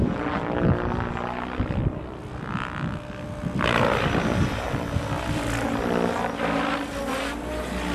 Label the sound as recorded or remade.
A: recorded